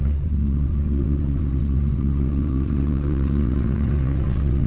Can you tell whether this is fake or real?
fake